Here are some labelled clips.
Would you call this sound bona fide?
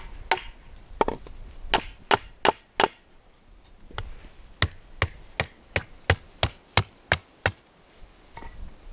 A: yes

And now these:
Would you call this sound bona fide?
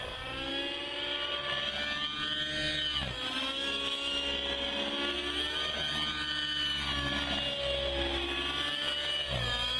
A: yes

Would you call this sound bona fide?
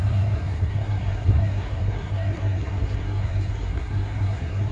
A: no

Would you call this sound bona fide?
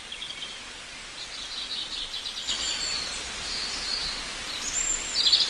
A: yes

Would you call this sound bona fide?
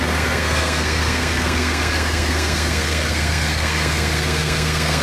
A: no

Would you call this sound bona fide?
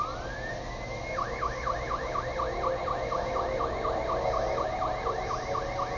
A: yes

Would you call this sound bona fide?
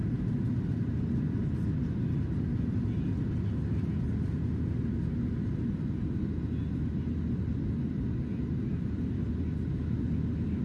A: yes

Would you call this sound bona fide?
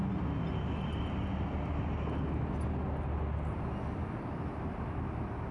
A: yes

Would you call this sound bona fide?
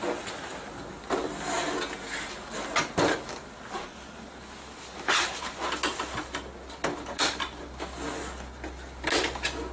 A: yes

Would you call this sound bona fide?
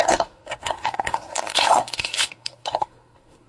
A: no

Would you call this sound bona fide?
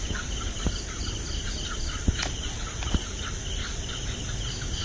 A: yes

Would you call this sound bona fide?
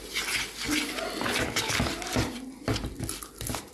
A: yes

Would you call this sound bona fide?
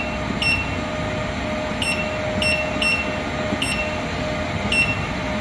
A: yes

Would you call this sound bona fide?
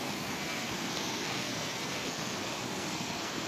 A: no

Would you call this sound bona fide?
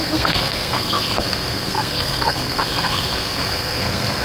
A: no